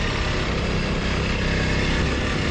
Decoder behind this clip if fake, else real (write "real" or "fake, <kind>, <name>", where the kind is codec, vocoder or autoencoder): real